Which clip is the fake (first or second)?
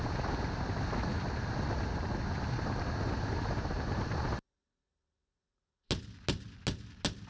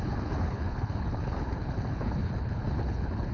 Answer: second